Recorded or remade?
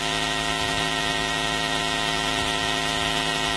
remade